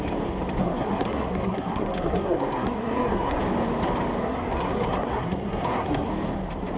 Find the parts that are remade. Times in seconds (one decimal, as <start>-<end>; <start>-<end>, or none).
0.6-3.4; 4.2-6.1